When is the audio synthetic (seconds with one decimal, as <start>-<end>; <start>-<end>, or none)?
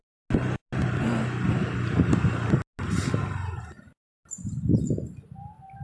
none